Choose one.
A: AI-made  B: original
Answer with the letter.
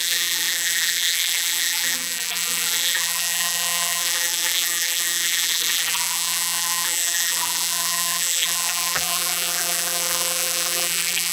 A